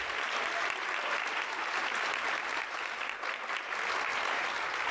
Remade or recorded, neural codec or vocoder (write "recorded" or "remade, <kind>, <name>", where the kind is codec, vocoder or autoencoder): recorded